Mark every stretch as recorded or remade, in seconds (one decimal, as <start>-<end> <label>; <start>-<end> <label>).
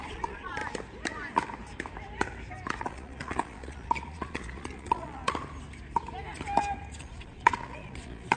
0.0-0.6 remade; 0.6-2.8 recorded; 2.8-5.2 remade; 5.2-7.0 recorded; 7.0-8.4 remade